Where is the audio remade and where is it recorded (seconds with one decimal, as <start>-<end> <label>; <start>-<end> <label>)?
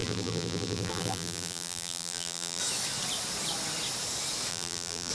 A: 0.0-2.6 remade; 2.6-4.5 recorded; 4.5-5.1 remade